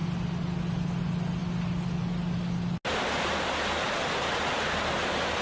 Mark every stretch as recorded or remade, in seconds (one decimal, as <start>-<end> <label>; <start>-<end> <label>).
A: 0.0-5.4 recorded